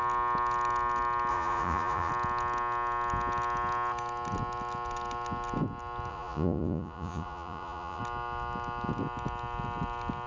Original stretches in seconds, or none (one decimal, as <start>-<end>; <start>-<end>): 0.0-1.3; 2.1-6.1; 8.0-10.3